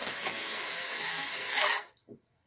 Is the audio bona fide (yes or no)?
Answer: no